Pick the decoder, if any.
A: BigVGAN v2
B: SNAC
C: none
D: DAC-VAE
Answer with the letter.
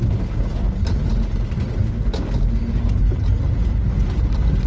C